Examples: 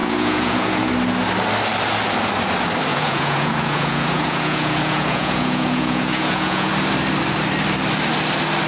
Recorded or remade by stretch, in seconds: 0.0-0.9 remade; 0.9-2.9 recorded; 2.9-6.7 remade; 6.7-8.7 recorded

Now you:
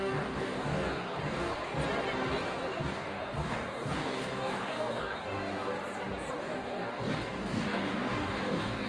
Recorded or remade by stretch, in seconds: 0.0-1.6 remade; 1.6-2.9 recorded; 2.9-5.5 remade; 5.5-6.3 recorded; 6.3-8.9 remade

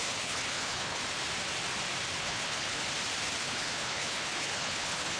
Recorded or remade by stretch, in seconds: 0.0-1.0 remade; 1.0-2.2 recorded; 2.2-2.8 remade; 2.8-3.4 recorded; 3.4-5.2 remade

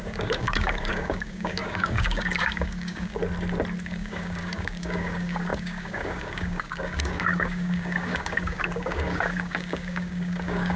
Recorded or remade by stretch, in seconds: 0.0-3.2 remade; 3.2-3.8 recorded; 3.8-10.8 remade

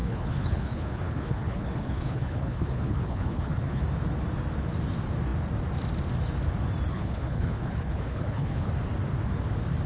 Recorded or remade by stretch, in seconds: 0.0-3.8 remade; 3.8-6.9 recorded; 6.9-8.7 remade; 8.7-9.9 recorded

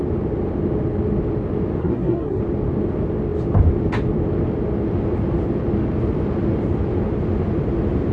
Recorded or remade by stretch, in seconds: 0.0-1.8 recorded; 1.8-2.4 remade; 2.4-8.1 recorded